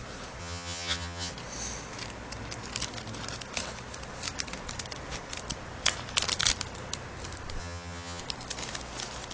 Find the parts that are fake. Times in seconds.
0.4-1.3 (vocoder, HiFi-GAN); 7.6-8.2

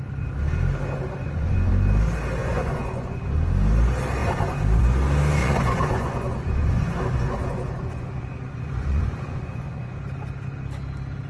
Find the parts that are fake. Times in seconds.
1.2-1.7 (vocoder, Vocos); 2.4-3.2; 5.4-10.0

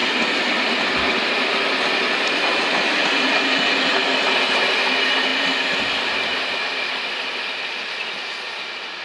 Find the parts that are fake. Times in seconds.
none

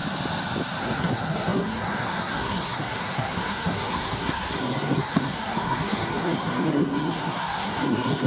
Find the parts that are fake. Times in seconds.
0.8-8.3 (codec, SNAC)

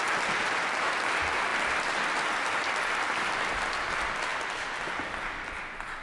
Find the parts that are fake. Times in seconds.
none

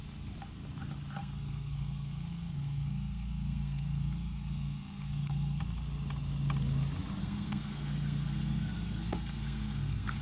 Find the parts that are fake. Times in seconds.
1.2-5.6 (codec, SNAC); 7.2-10.2

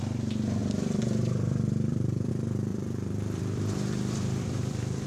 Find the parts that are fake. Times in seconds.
0.6-2.3 (vocoder, BigVGAN v2); 2.7-5.1

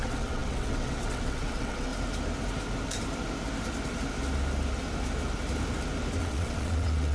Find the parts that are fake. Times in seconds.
0.0-1.9 (vocoder, WaveNeXt); 6.2-7.1